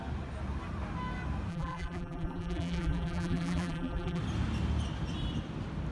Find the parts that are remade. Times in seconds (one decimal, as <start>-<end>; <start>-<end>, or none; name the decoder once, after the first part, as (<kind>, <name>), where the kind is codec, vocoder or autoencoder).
1.5-4.2 (vocoder, BigVGAN v2)